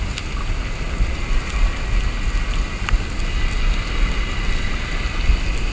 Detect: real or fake real